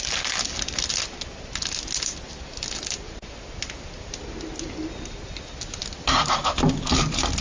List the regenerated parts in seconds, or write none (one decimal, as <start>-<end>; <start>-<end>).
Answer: none